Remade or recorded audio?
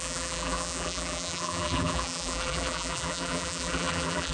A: remade